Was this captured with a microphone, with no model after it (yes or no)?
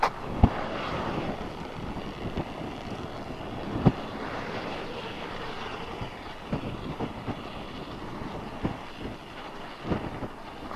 yes